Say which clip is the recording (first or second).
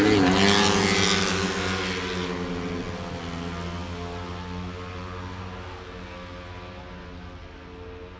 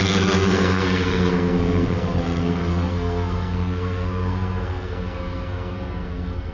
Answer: first